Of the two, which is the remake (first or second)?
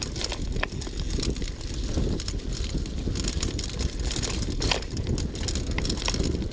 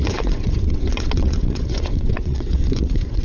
second